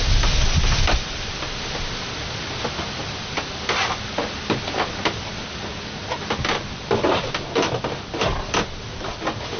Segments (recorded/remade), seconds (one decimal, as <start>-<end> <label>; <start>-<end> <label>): 0.0-9.6 recorded